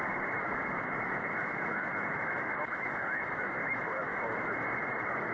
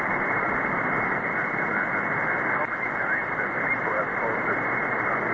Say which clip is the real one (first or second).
second